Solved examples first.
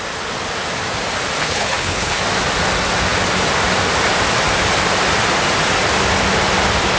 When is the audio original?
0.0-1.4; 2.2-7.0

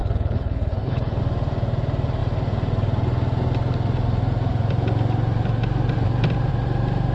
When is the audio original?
1.2-7.1

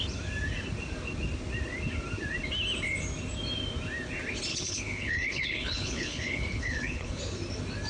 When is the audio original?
0.0-4.5; 7.2-7.9

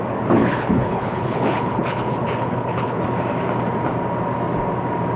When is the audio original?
0.0-0.4; 3.0-5.2

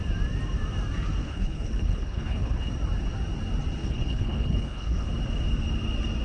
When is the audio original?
0.0-1.2; 2.7-3.8; 5.1-6.2

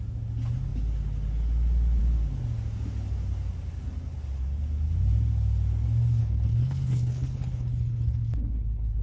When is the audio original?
0.0-6.2

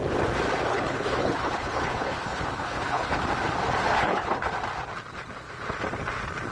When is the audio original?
0.0-0.7; 3.2-3.9; 4.5-6.5

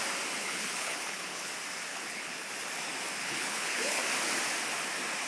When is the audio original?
0.0-0.4; 1.5-1.9; 2.5-3.2; 4.0-5.3